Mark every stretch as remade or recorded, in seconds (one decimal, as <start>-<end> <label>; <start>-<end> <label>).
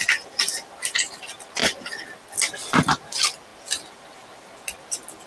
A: 0.0-5.3 recorded